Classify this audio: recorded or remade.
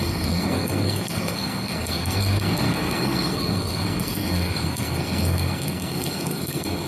remade